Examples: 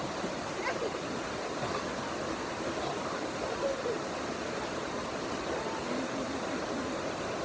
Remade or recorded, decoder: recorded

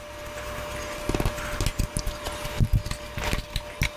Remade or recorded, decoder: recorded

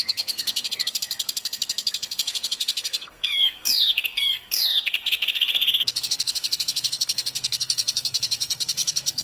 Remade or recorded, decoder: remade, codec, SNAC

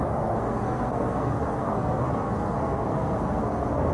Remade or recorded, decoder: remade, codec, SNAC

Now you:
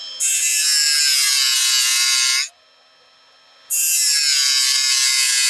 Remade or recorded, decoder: recorded